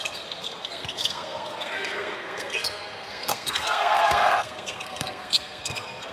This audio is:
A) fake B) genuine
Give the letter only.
A